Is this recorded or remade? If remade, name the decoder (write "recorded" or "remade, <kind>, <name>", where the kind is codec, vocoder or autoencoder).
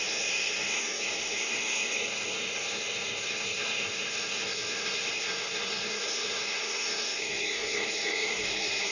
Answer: remade, codec, SNAC